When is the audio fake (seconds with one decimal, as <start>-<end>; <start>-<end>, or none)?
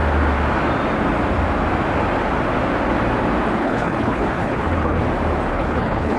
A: 3.6-5.0; 5.5-6.2